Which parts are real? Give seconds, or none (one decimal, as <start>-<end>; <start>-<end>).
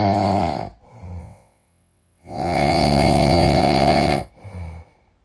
0.0-1.2; 4.3-5.2